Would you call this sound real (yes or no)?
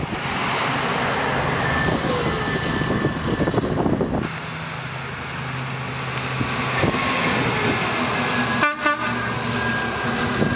yes